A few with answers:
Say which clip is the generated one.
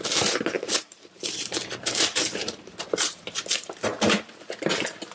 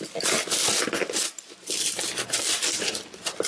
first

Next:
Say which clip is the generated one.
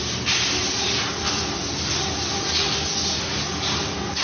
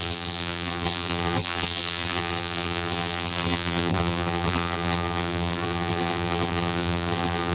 second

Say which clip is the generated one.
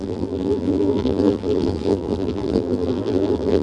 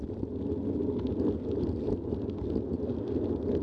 first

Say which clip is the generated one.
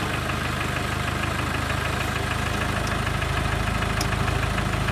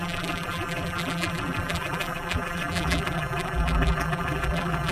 second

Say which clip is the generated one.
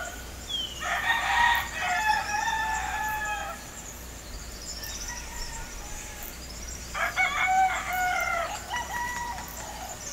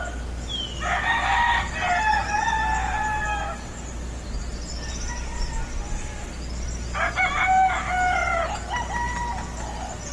first